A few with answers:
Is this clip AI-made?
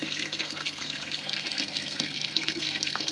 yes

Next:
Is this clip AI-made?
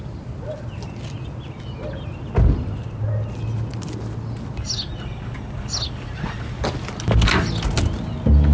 no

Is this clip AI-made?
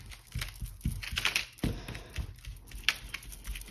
no